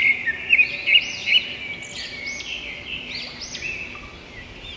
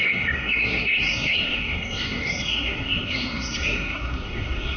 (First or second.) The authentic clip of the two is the first